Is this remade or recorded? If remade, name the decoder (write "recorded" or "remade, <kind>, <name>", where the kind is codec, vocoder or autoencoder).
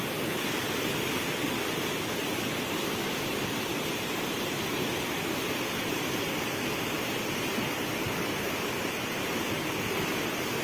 recorded